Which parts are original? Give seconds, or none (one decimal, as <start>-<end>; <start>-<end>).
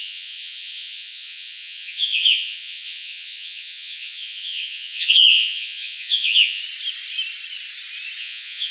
6.6-8.2